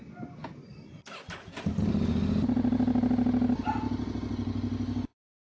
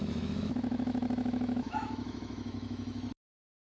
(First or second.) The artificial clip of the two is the second